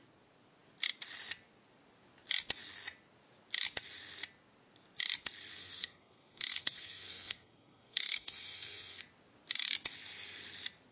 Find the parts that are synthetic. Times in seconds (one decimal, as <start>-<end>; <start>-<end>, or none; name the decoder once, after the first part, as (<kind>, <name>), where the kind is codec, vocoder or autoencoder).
5.6-9.0 (codec, SNAC)